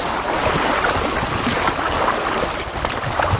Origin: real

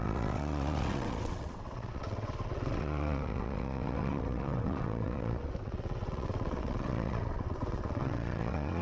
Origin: fake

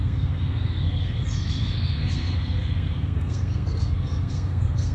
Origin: fake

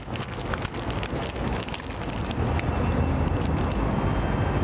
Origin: real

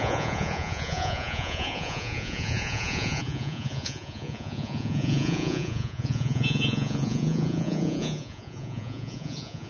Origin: fake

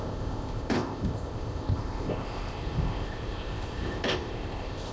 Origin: fake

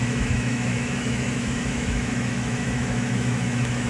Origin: fake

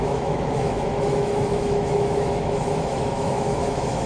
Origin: fake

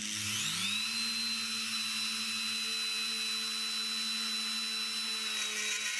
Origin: real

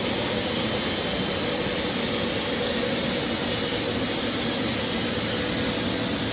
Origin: real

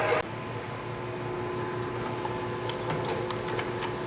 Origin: real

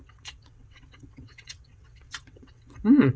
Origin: fake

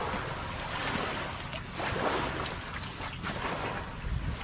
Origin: real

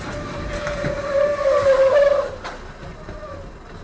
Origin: real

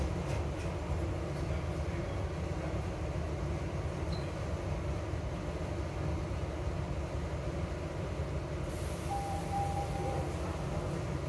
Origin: real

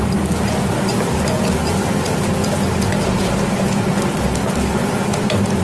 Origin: real